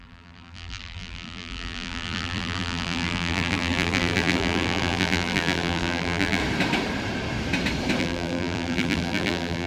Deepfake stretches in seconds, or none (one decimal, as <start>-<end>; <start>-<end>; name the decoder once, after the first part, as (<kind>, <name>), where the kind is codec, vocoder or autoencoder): 0.0-6.4 (vocoder, BigVGAN v2); 8.0-9.7